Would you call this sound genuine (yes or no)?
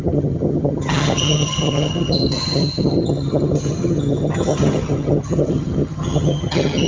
no